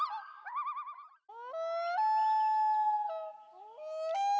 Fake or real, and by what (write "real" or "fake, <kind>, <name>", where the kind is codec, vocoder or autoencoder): real